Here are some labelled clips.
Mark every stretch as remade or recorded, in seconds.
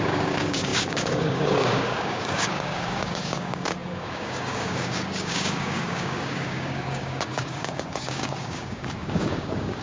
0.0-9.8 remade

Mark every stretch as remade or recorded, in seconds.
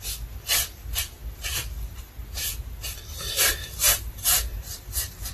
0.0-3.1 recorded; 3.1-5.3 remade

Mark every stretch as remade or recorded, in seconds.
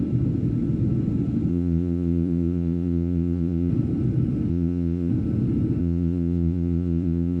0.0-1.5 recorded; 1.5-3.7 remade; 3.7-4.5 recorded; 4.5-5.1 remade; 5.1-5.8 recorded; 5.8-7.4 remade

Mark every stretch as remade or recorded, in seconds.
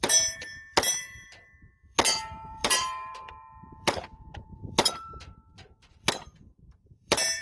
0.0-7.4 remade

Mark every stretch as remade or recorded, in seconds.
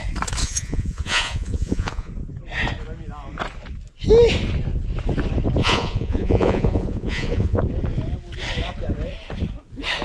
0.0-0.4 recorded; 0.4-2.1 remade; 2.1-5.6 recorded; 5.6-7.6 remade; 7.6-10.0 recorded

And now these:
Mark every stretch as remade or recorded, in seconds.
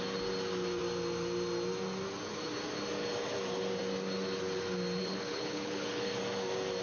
0.0-5.0 recorded; 5.0-6.2 remade; 6.2-6.8 recorded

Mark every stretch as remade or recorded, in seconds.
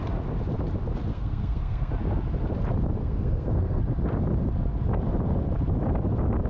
0.0-1.1 recorded; 1.1-1.9 remade; 1.9-3.0 recorded; 3.0-3.8 remade; 3.8-6.5 recorded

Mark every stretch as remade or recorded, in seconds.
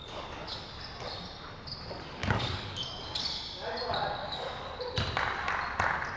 0.0-0.7 remade; 0.7-2.2 recorded; 2.2-2.9 remade; 2.9-4.2 recorded; 4.2-4.8 remade; 4.8-6.2 recorded